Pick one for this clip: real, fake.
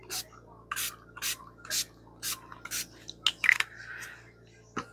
real